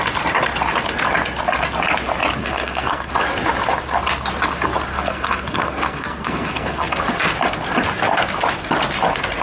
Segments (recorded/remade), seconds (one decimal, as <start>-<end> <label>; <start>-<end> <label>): 0.0-2.4 recorded; 2.4-3.1 remade; 3.1-4.9 recorded; 4.9-7.0 remade; 7.0-9.4 recorded